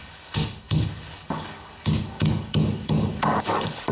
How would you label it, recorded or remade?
remade